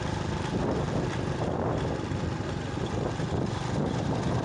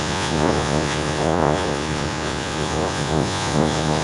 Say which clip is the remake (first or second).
second